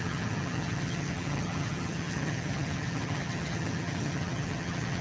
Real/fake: fake